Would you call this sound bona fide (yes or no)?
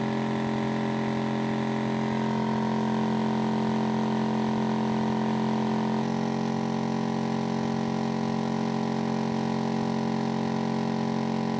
yes